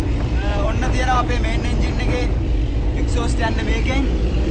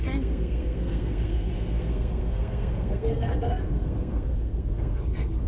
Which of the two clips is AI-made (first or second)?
second